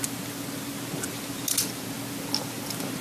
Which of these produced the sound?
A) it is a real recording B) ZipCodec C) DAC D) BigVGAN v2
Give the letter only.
A